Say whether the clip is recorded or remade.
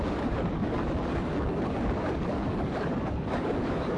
remade